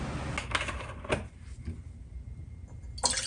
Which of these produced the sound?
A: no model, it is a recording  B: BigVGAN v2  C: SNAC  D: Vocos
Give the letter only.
A